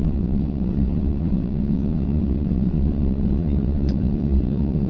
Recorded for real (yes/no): no